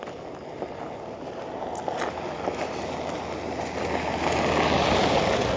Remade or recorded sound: recorded